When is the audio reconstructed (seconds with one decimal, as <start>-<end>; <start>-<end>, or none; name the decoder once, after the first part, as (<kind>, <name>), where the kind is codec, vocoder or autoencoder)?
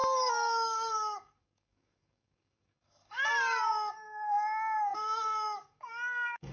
0.0-6.5 (codec, DAC)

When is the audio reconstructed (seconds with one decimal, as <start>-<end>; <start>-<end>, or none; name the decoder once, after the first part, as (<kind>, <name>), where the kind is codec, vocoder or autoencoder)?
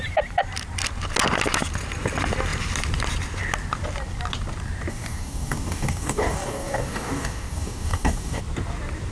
4.9-8.4 (codec, DAC)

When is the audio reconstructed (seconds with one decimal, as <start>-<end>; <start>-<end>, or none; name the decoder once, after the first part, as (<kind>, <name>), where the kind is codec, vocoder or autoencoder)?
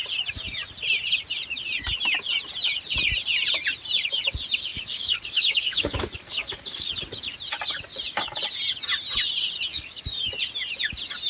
4.7-6.9 (codec, DAC); 9.7-10.3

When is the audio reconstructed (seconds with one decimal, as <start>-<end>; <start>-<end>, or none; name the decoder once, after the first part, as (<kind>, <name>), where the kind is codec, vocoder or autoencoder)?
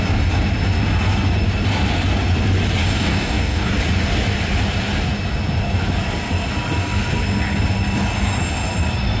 2.8-3.7 (codec, DAC)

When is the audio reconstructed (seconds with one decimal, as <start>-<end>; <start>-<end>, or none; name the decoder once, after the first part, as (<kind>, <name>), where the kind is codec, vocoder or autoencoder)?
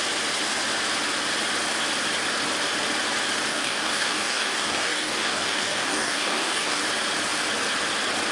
3.5-6.8 (codec, DAC)